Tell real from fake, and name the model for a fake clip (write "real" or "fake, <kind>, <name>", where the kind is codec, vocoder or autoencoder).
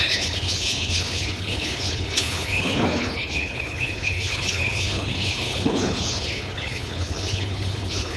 fake, codec, HILCodec